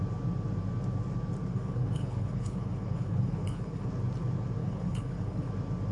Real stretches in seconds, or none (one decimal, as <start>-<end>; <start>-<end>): 0.0-1.5; 3.9-4.6; 5.5-5.9